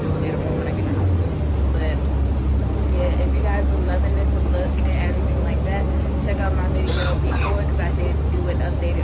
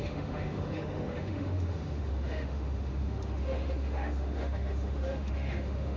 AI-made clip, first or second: second